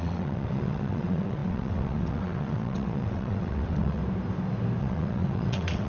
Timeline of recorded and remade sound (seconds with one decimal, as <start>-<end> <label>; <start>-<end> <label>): 0.0-4.0 remade; 4.0-4.8 recorded; 4.8-5.9 remade

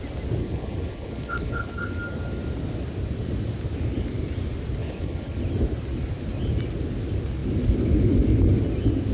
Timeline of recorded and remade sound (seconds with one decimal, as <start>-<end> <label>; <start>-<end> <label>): 0.0-0.4 recorded; 0.4-1.9 remade; 1.9-4.8 recorded; 4.8-5.4 remade; 5.4-9.1 recorded